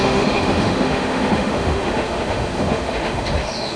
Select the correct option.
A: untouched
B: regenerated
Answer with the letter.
B